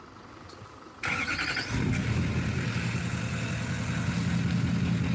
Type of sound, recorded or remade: recorded